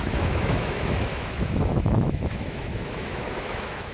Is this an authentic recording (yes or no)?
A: no